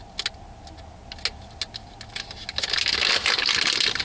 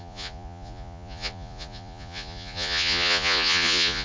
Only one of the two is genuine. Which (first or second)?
first